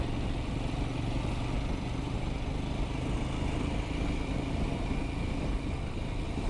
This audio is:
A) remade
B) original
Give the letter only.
B